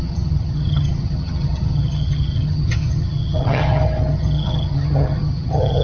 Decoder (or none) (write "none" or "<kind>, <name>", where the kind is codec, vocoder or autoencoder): vocoder, HiFi-GAN